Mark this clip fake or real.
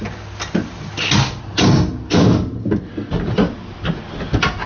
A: real